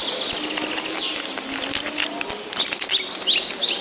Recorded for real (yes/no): yes